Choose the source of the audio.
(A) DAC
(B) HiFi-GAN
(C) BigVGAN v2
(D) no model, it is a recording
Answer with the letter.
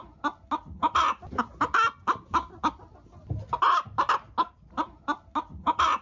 D